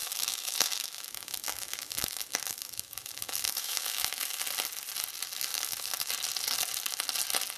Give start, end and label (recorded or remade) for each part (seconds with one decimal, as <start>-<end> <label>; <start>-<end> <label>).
0.0-4.4 remade; 4.4-5.5 recorded; 5.5-6.1 remade; 6.1-7.6 recorded